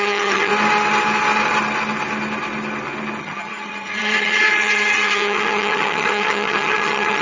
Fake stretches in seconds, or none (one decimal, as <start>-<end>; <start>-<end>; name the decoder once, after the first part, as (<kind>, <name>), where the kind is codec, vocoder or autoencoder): 0.0-0.5 (vocoder, HiFi-GAN); 3.2-7.2

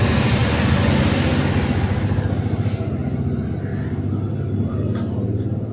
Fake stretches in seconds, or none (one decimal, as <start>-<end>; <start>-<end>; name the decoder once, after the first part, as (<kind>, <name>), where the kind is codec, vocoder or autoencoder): none

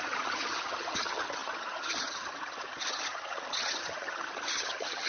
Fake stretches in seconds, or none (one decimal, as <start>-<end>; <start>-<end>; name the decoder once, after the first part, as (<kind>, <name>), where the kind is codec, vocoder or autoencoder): 0.0-5.1 (vocoder, HiFi-GAN)

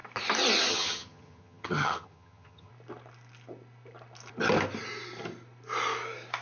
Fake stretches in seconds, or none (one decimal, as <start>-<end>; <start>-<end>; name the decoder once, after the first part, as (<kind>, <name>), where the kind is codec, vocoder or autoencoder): 0.7-2.7 (vocoder, HiFi-GAN)

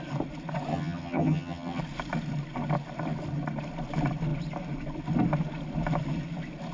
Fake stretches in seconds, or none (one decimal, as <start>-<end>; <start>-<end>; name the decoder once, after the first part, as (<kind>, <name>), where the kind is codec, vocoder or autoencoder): 0.7-1.8 (vocoder, HiFi-GAN)

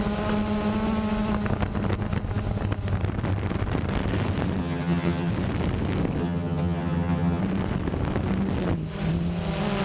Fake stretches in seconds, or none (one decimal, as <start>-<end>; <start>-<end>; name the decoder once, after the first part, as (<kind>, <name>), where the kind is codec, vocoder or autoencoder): 4.6-5.3 (vocoder, HiFi-GAN); 6.2-7.4

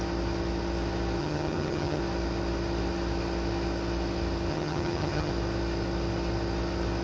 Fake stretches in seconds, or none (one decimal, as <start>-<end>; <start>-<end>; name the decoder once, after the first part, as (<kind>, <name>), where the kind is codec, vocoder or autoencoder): 1.2-2.0 (vocoder, HiFi-GAN); 4.5-5.3

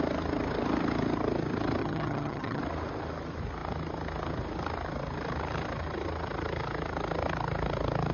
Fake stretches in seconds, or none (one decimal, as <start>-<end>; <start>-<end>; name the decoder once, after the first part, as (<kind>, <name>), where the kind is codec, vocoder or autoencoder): 1.8-2.6 (vocoder, HiFi-GAN)